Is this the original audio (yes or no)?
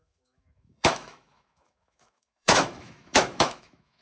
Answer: no